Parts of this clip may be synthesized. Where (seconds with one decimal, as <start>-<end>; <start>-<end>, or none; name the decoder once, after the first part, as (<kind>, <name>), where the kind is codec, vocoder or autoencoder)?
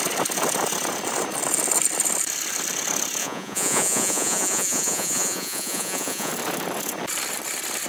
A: 3.2-6.3 (vocoder, Vocos)